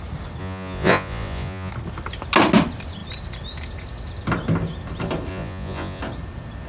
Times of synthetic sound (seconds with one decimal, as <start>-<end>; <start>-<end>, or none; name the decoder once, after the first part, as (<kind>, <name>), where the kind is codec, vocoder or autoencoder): 0.4-1.7 (vocoder, Vocos); 5.3-6.0

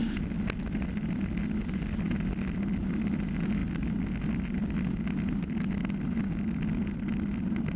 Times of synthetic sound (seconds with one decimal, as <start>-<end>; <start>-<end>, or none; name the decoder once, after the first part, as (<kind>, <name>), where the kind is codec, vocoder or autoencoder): none

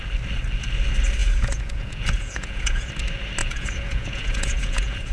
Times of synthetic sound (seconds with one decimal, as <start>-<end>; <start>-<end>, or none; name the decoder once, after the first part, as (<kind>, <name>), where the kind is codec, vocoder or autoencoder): 1.2-2.9 (vocoder, Vocos); 3.4-5.1

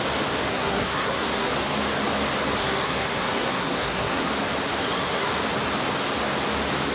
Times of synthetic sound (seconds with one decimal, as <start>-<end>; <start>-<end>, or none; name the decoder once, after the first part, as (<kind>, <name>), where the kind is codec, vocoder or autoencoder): 0.5-1.5 (codec, SNAC); 2.6-4.3; 4.8-5.3